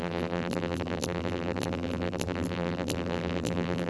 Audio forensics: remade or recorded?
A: remade